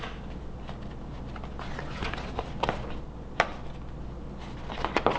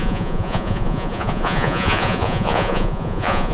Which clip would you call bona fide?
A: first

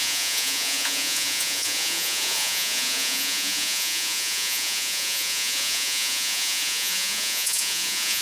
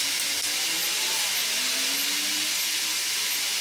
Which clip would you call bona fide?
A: second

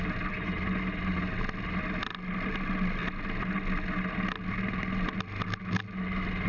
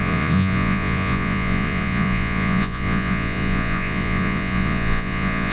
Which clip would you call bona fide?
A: first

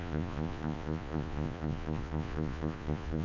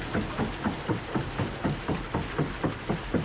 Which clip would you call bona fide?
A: second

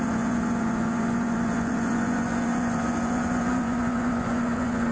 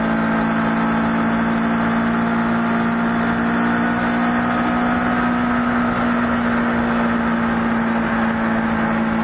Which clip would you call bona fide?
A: second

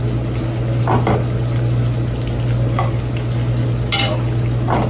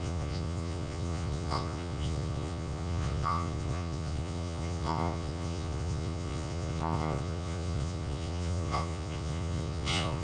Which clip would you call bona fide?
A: first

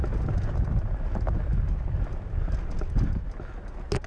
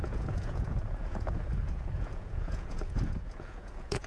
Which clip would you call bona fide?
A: first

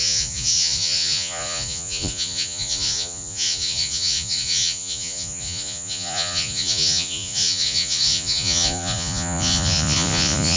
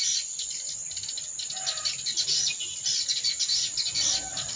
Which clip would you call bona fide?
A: second